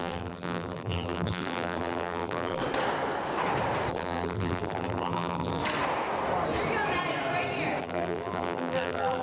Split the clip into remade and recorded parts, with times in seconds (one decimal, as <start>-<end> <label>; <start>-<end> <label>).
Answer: 0.0-2.6 remade; 2.6-3.9 recorded; 3.9-5.6 remade; 5.6-7.8 recorded; 7.8-9.2 remade